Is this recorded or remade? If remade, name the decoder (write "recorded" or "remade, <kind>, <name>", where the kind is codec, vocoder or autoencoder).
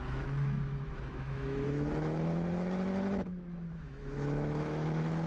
remade, autoencoder, DAC-VAE